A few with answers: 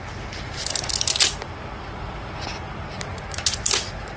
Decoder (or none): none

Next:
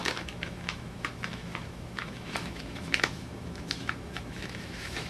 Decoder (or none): autoencoder, DAC-VAE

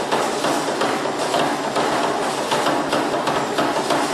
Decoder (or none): none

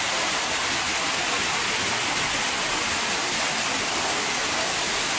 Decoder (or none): none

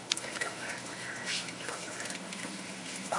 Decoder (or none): autoencoder, DAC-VAE